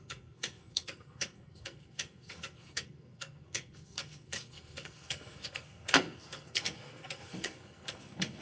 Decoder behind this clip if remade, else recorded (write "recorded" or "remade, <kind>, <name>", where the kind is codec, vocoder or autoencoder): remade, codec, SNAC